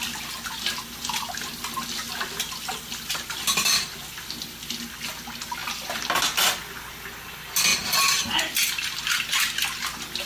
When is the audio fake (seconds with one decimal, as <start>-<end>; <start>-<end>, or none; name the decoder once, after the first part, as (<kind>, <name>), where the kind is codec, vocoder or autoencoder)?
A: none